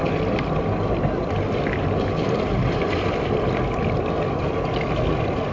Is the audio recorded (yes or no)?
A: yes